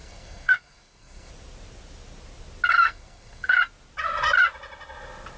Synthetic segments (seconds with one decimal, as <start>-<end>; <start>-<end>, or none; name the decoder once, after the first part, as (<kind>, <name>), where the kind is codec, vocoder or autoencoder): 0.0-1.3 (codec, SNAC); 2.7-3.6